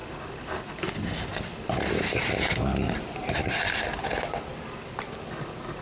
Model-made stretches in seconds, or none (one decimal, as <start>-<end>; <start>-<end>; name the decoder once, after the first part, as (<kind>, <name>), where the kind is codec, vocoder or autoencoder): none